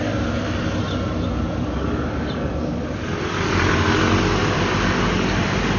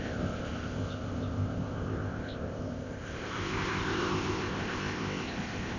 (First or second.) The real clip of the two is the first